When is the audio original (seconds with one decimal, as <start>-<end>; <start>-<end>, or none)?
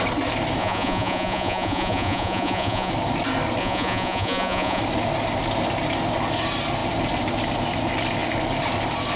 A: 0.0-0.6; 2.9-3.6; 4.8-9.2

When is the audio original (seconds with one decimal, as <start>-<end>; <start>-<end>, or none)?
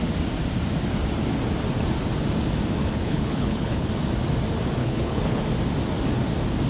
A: 0.0-2.8; 3.9-4.8; 5.4-6.7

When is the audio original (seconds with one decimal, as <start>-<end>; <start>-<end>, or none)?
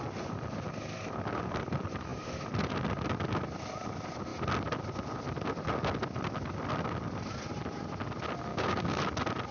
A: 0.0-8.5; 9.0-9.5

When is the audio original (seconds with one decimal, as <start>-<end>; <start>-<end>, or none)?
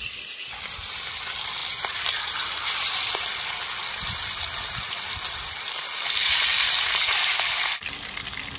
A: 0.0-8.6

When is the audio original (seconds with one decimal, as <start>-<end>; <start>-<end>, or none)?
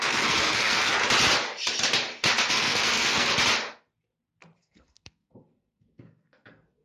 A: 1.0-2.5; 3.3-4.6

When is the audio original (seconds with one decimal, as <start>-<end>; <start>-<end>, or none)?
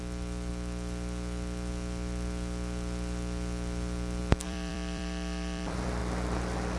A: 0.5-4.2; 6.0-6.8